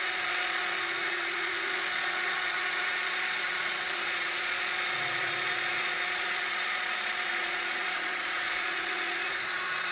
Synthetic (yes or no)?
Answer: yes